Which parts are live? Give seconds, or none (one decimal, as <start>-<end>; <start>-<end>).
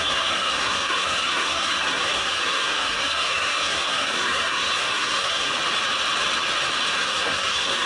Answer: 5.5-6.9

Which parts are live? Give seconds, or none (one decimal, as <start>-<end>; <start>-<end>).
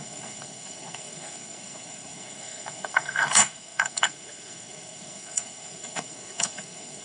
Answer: none